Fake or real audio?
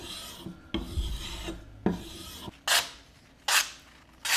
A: real